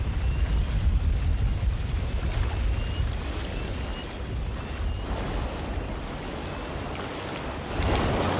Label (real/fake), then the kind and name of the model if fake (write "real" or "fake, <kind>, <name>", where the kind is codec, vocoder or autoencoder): real